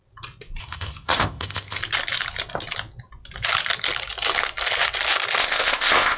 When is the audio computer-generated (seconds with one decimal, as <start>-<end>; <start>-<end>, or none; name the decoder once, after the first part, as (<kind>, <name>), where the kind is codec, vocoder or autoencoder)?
0.6-1.8 (codec, ZipCodec); 5.4-6.2